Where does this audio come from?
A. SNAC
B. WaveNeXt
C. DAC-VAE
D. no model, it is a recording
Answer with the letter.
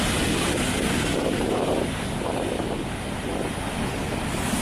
D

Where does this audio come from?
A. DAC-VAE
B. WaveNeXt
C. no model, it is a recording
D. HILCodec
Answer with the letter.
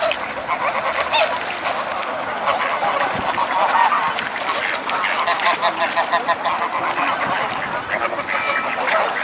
C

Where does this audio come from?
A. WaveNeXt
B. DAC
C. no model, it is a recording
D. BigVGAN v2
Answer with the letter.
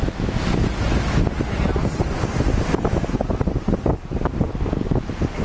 C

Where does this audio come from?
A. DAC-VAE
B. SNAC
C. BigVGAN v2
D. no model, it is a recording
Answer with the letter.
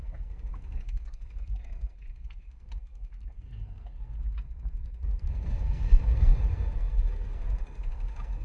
B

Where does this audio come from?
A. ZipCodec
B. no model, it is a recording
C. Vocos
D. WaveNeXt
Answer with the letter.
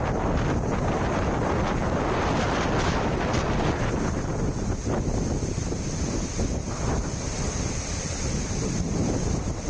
B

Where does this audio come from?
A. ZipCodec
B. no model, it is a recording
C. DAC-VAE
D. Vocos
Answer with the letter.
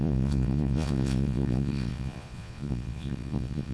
D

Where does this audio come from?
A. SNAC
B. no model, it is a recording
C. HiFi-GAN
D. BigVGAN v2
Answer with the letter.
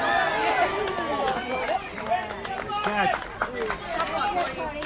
B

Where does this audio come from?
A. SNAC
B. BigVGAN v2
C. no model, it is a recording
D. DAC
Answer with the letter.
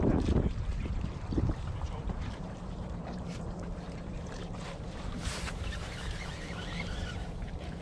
B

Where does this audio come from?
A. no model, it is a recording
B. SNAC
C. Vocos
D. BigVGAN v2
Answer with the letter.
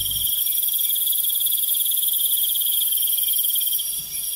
D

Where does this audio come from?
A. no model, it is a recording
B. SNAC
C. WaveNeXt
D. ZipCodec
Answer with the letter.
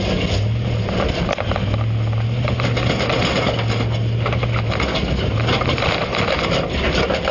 A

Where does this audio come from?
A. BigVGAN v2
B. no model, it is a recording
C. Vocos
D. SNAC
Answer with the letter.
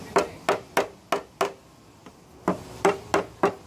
B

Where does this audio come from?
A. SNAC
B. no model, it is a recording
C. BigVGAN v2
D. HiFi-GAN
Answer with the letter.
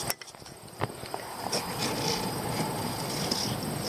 B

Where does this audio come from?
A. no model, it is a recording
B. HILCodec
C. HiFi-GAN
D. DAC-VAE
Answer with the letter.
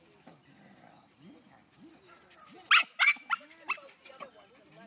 A